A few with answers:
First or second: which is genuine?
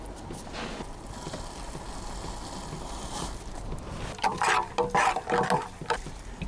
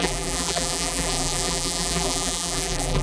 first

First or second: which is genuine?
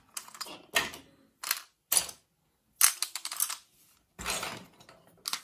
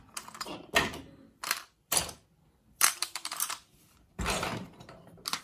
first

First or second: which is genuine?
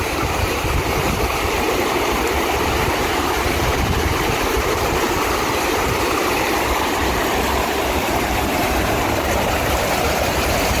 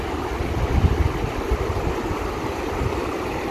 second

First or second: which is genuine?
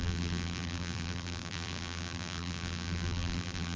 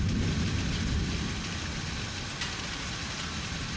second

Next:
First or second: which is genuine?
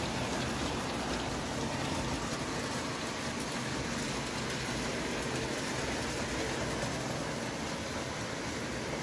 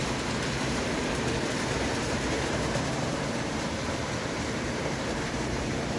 first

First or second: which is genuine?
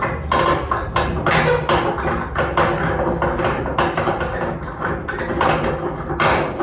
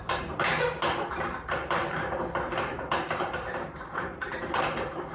first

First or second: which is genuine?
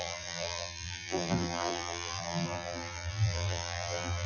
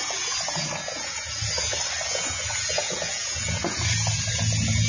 second